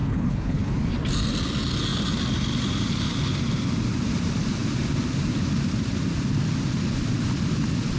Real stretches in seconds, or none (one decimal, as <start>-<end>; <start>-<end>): 0.7-8.0